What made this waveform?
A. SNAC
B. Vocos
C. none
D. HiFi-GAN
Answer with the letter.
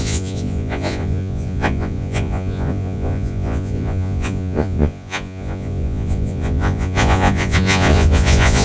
B